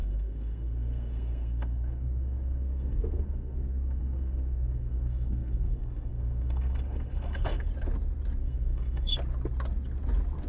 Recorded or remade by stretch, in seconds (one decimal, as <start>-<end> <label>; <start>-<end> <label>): 0.0-7.7 remade; 7.7-8.4 recorded; 8.4-9.1 remade; 9.1-10.5 recorded